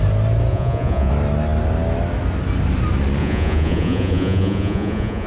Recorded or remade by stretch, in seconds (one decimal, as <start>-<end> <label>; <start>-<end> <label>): 0.0-0.5 recorded; 0.5-1.1 remade; 1.1-3.2 recorded; 3.2-5.3 remade